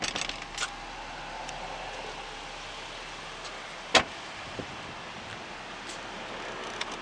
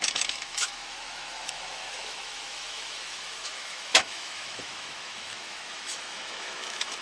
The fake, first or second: second